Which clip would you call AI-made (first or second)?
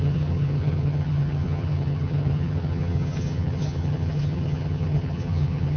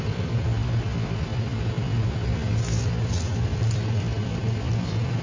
first